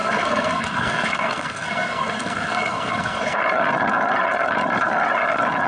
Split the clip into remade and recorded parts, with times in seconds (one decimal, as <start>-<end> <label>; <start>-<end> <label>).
0.0-3.4 remade; 3.4-5.7 recorded